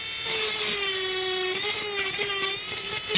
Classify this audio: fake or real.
real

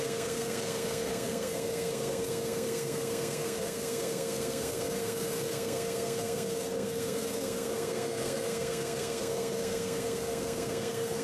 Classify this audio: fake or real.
fake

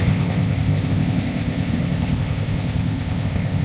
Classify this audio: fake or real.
fake